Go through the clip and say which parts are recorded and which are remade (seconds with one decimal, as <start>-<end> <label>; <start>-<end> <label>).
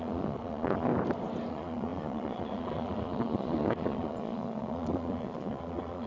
0.0-0.9 remade; 0.9-1.5 recorded; 1.5-6.1 remade